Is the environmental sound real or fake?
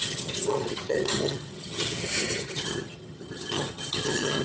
fake